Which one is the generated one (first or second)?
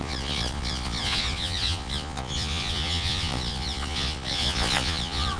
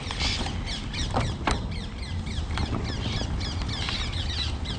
first